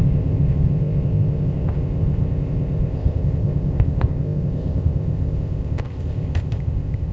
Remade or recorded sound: remade